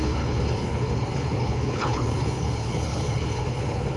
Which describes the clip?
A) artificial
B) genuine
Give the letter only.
A